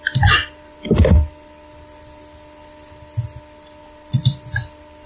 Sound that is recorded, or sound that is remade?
recorded